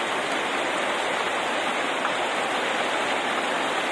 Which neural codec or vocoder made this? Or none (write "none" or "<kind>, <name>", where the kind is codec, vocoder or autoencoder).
none